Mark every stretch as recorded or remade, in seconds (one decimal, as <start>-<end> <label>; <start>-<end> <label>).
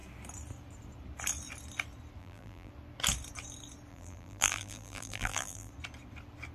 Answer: 0.0-2.2 recorded; 2.2-2.7 remade; 2.7-3.9 recorded; 3.9-5.7 remade; 5.7-6.5 recorded